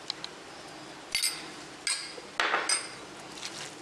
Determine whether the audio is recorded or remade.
recorded